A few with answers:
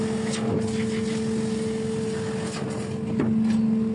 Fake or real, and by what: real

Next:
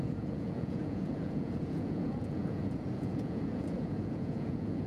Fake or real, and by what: fake, vocoder, Vocos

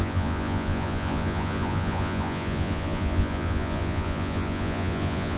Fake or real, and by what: fake, vocoder, Vocos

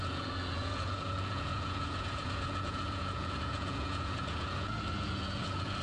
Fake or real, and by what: fake, vocoder, Vocos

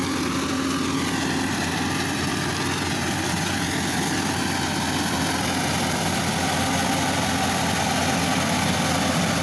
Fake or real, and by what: real